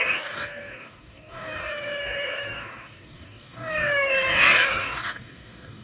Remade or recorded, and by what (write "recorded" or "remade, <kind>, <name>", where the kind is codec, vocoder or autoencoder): remade, codec, DAC